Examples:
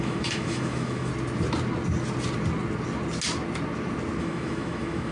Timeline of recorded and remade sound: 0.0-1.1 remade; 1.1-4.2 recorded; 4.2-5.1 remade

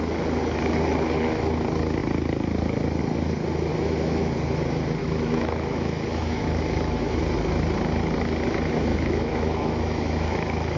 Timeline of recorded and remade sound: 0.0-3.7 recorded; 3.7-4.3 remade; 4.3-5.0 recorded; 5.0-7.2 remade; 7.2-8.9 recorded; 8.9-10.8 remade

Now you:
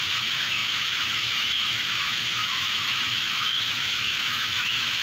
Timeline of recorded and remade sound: 0.0-5.0 remade

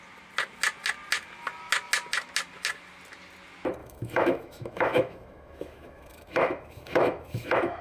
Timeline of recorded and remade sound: 0.0-3.8 recorded; 3.8-7.8 remade

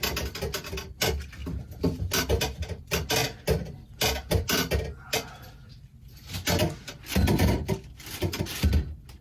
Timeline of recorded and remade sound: 0.0-9.2 recorded

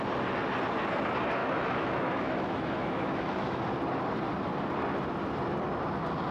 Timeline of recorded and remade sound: 0.0-1.4 recorded; 1.4-3.6 remade; 3.6-6.3 recorded

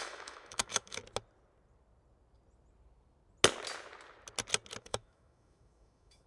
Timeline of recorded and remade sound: 0.0-1.0 remade; 1.0-4.8 recorded; 4.8-6.3 remade